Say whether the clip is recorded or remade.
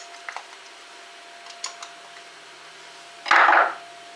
recorded